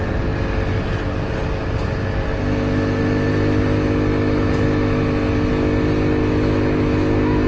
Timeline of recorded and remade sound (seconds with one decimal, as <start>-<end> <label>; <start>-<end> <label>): 0.0-6.2 recorded; 6.2-7.0 remade; 7.0-7.5 recorded